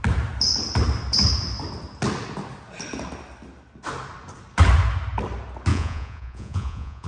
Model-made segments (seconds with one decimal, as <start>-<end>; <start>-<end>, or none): 5.7-7.1